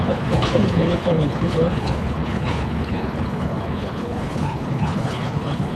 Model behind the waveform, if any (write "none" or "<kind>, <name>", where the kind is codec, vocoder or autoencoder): codec, HILCodec